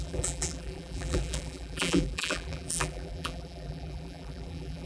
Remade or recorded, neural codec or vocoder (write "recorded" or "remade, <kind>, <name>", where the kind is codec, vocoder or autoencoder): remade, vocoder, BigVGAN v2